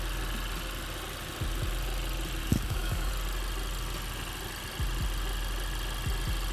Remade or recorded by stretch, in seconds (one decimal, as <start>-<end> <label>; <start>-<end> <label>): 0.0-2.4 recorded; 2.4-3.1 remade; 3.1-6.5 recorded